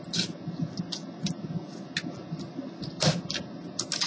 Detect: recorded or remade recorded